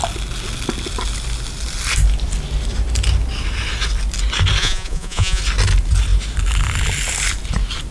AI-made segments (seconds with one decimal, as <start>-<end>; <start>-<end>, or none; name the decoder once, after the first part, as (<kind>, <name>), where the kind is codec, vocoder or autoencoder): 4.6-5.4 (vocoder, Vocos)